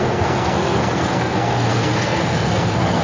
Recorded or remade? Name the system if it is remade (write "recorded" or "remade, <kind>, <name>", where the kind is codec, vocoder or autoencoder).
remade, codec, SNAC